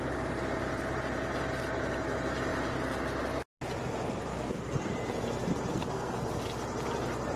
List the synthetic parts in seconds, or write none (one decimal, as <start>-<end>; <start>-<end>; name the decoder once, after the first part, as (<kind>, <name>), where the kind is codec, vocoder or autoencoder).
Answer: 4.3-4.9 (codec, SNAC); 5.7-6.2